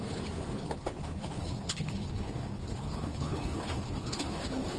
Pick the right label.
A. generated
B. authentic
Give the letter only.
A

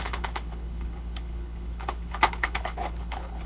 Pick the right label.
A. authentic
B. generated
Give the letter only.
B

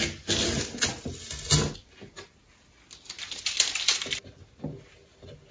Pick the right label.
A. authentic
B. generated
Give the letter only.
A